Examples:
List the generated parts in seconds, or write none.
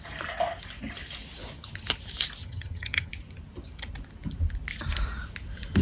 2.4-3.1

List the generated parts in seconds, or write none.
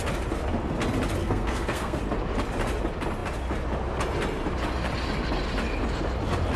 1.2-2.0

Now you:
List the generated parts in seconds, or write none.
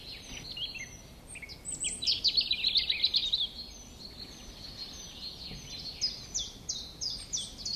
none